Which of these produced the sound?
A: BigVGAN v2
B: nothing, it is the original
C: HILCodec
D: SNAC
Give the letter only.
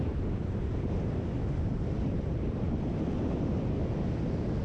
A